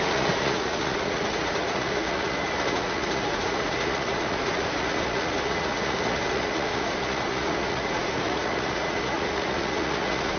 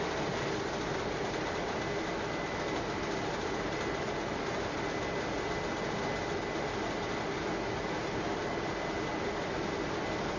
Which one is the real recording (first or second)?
second